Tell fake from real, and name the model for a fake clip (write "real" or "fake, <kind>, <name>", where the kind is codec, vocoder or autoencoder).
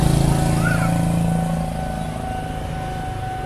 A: real